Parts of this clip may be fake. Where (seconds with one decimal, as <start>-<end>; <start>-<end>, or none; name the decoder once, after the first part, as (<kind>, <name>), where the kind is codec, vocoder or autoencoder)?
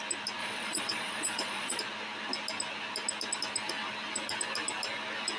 0.4-1.8 (vocoder, Vocos)